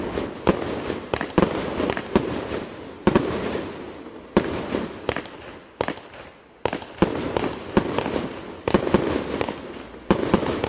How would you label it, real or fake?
real